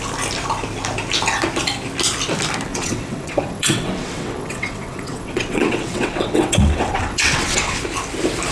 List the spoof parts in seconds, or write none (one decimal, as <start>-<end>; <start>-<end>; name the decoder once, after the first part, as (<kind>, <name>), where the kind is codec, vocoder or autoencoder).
2.7-7.8 (vocoder, WaveNeXt)